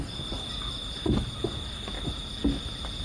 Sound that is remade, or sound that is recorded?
recorded